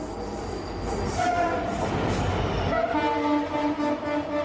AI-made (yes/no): no